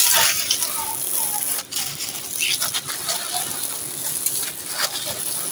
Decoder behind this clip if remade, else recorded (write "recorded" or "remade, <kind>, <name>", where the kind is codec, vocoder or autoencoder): recorded